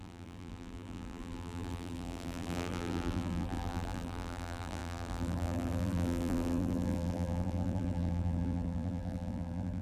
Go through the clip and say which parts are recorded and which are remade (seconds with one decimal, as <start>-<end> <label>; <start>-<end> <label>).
0.0-9.8 remade